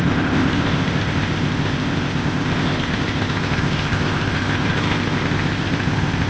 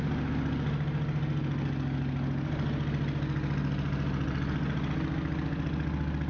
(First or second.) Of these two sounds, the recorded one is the second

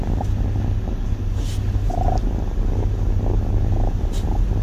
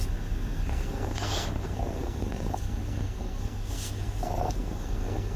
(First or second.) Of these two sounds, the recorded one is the first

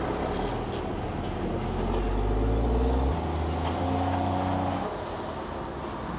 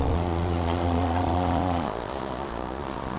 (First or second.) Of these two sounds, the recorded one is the first